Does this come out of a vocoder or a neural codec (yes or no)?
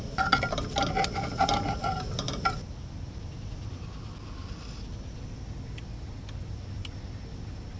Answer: no